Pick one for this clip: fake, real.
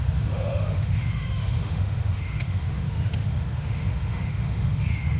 fake